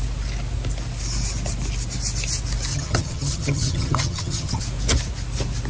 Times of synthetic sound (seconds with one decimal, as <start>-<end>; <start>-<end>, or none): 2.7-4.6